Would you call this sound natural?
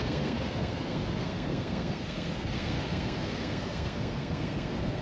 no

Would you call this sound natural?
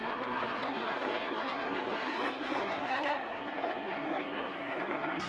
no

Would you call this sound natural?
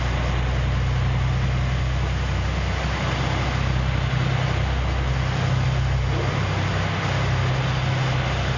yes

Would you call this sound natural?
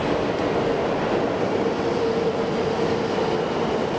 yes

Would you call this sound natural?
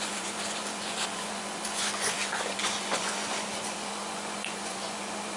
no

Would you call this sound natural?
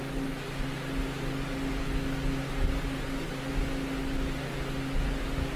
yes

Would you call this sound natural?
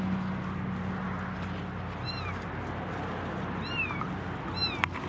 yes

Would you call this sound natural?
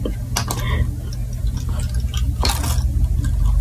yes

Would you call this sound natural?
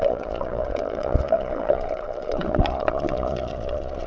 no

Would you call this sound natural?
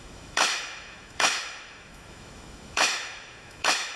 no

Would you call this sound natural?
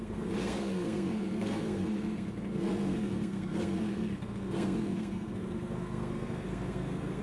no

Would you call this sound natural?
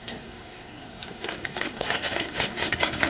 no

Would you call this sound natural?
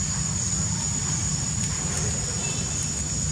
yes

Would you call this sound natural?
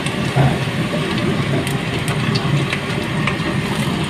yes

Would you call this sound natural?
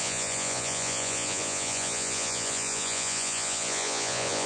no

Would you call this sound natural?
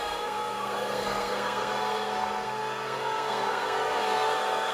no